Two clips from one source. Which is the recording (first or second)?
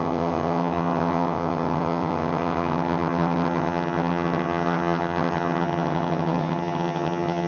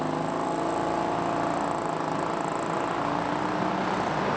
second